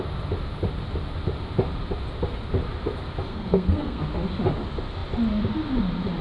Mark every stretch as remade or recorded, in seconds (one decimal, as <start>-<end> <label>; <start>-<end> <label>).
0.0-3.3 recorded; 3.3-4.0 remade; 4.0-6.2 recorded